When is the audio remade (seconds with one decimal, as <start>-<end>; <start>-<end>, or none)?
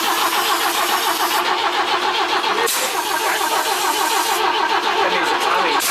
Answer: none